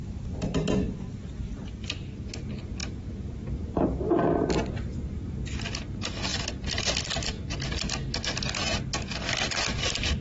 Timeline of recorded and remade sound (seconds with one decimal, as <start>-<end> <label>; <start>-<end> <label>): 0.0-10.2 recorded